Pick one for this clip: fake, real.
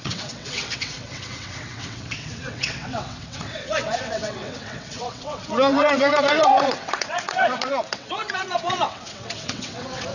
fake